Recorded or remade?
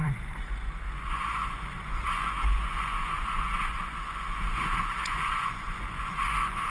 remade